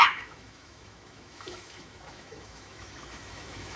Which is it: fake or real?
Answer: fake